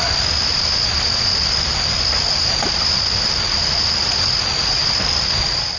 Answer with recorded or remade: recorded